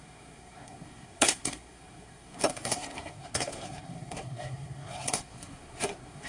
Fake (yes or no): yes